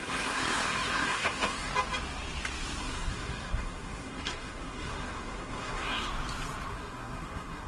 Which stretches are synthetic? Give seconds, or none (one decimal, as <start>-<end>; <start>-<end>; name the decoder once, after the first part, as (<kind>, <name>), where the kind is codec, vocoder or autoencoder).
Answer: 0.0-1.7 (codec, SNAC); 2.8-6.1; 6.7-7.7